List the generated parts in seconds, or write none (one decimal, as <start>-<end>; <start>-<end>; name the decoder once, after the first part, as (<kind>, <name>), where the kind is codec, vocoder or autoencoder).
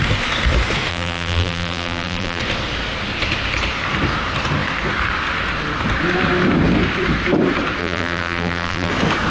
0.9-2.4 (vocoder, BigVGAN v2); 7.8-8.9